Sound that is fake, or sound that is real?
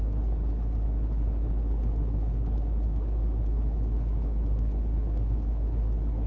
fake